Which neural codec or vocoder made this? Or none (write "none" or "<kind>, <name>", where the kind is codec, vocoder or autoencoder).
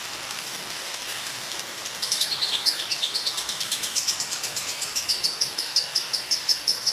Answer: codec, DAC